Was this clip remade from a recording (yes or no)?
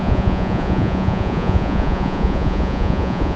yes